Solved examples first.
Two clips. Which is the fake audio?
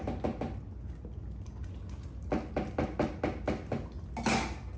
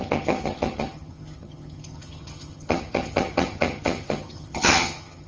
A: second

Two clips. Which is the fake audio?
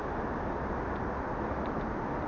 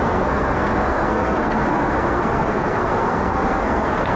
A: second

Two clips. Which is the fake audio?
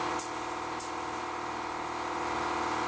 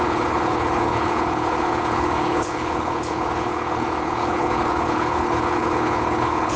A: second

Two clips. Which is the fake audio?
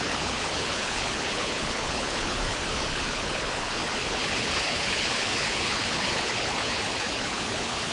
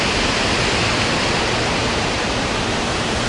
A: first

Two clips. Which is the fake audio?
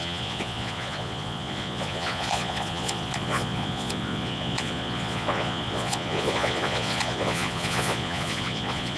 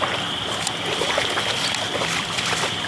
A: first